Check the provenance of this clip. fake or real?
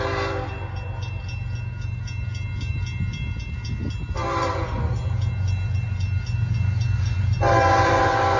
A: real